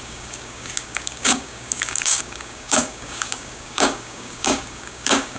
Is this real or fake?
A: fake